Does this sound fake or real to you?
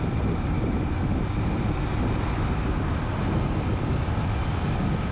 real